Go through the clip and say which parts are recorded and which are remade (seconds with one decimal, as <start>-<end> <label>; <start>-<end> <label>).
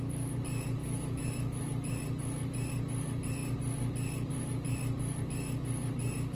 0.0-0.8 recorded; 0.8-1.6 remade; 1.6-6.3 recorded